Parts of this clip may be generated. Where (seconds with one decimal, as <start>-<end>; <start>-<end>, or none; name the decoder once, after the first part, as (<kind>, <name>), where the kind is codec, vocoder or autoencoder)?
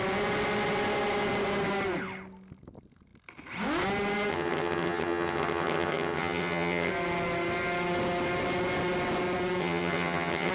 4.3-6.9 (vocoder, HiFi-GAN); 9.6-10.5